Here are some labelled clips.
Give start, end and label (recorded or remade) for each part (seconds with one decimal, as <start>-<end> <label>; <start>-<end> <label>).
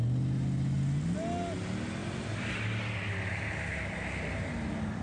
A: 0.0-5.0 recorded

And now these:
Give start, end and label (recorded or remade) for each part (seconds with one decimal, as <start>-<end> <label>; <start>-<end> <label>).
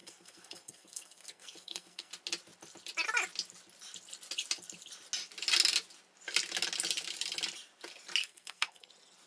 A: 0.0-2.1 remade; 2.1-8.2 recorded; 8.2-8.9 remade; 8.9-9.3 recorded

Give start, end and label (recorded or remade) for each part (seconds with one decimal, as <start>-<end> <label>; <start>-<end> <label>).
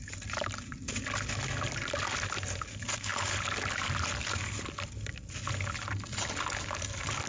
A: 0.0-7.3 recorded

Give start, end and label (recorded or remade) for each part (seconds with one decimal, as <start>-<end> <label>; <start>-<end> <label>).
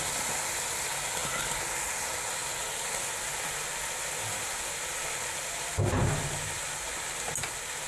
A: 0.0-7.9 recorded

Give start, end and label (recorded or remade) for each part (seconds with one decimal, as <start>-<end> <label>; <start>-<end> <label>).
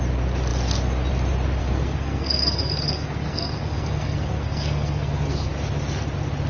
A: 0.0-1.6 recorded; 1.6-5.5 remade; 5.5-6.5 recorded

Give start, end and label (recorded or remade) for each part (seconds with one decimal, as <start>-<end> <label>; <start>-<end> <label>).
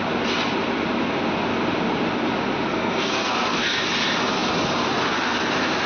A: 0.0-2.7 recorded; 2.7-3.3 remade; 3.3-5.9 recorded